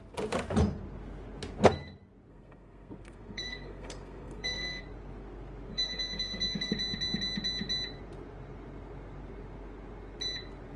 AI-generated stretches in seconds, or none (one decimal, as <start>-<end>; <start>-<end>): 2.3-4.8; 5.7-6.7